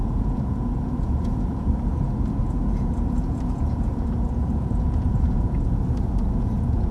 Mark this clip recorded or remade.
remade